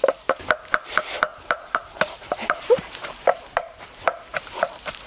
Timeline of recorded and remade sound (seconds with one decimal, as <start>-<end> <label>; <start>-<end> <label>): 0.0-1.3 recorded; 1.3-3.8 remade; 3.8-4.3 recorded; 4.3-5.1 remade